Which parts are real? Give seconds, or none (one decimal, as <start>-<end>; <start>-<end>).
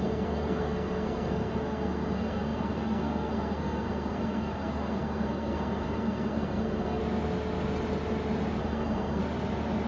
7.0-8.6; 9.2-9.9